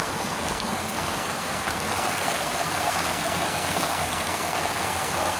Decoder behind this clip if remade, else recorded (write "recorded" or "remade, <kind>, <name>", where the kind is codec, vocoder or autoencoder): remade, codec, SNAC